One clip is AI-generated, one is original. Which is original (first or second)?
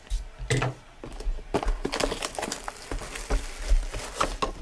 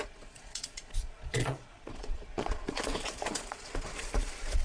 first